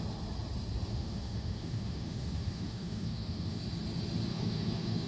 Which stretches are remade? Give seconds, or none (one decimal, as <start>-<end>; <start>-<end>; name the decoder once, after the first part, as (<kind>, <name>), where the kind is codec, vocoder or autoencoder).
0.9-3.6 (autoencoder, DAC-VAE); 4.3-5.1